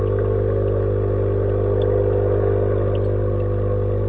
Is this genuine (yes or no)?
yes